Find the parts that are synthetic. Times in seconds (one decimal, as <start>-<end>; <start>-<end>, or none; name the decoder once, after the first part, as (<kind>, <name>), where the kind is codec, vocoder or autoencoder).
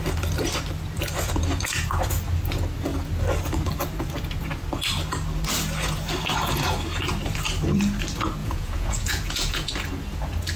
8.4-9.7 (vocoder, Vocos)